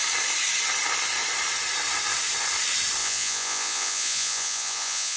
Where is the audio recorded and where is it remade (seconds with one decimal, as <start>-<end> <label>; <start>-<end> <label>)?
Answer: 0.0-3.0 recorded; 3.0-5.2 remade